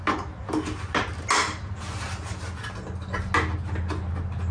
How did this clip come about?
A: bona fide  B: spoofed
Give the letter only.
A